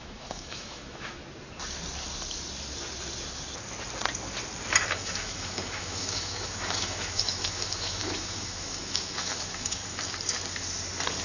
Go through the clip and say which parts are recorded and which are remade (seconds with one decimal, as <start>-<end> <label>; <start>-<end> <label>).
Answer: 0.0-1.2 remade; 1.2-4.9 recorded; 4.9-9.8 remade; 9.8-11.2 recorded